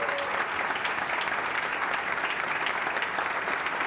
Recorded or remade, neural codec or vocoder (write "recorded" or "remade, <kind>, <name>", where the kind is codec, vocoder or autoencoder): recorded